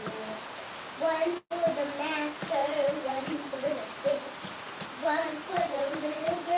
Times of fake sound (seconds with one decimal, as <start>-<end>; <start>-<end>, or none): 2.6-6.6